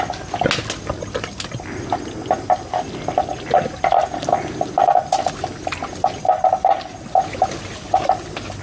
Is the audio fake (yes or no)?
no